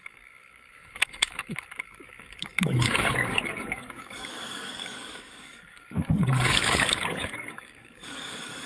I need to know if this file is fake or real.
fake